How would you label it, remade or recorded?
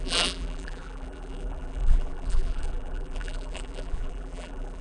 remade